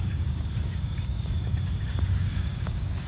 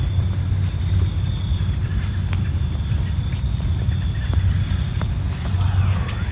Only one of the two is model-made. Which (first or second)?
first